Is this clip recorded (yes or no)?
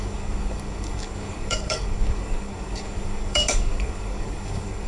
no